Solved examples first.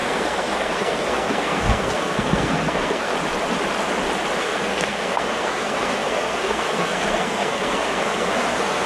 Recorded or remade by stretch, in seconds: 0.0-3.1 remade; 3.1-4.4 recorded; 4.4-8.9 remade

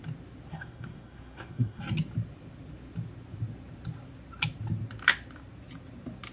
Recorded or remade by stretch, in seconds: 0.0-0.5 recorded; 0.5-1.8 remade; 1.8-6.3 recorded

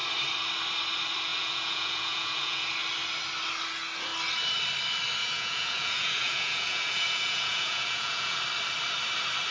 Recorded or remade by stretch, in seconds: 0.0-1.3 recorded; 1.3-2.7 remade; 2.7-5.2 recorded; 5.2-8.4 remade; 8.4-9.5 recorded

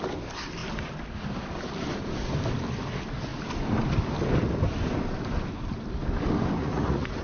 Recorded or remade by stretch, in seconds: 0.0-6.6 recorded; 6.6-7.2 remade

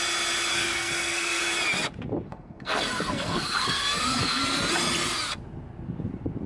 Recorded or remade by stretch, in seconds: 0.0-0.5 recorded; 0.5-1.4 remade; 1.4-2.3 recorded; 2.3-4.4 remade; 4.4-6.5 recorded